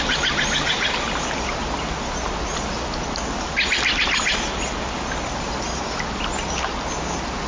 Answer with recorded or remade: recorded